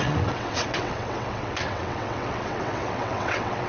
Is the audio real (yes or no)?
no